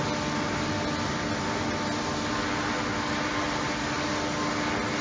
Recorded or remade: recorded